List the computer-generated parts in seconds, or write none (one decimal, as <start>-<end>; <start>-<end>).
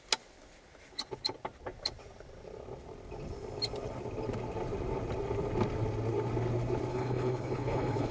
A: 6.9-8.1